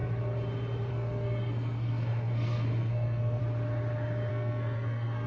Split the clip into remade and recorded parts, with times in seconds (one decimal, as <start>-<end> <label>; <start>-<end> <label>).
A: 0.0-0.9 recorded; 0.9-3.4 remade; 3.4-4.3 recorded; 4.3-5.3 remade